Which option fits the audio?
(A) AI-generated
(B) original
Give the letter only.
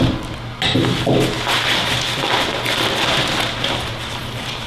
B